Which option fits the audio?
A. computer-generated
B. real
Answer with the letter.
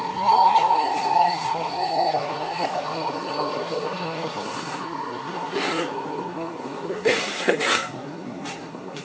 A